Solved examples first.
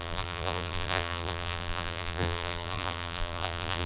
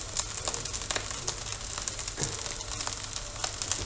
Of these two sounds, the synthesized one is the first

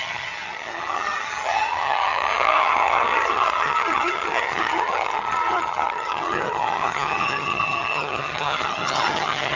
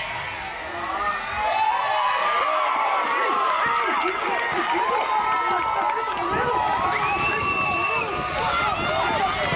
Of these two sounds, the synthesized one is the first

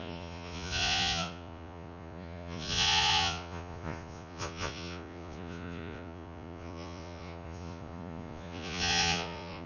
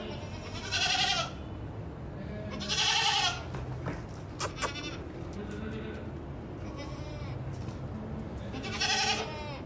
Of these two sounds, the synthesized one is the first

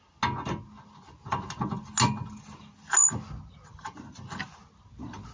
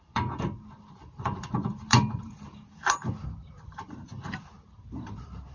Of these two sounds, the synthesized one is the second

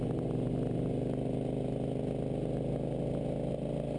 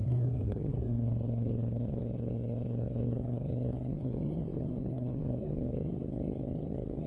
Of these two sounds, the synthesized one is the second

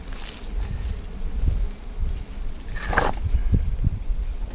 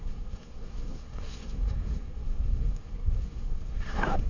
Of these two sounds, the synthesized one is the second